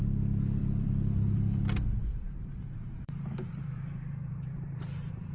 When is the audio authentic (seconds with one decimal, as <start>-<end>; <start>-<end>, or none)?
0.0-0.6; 1.6-2.0